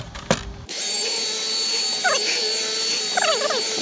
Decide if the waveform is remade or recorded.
recorded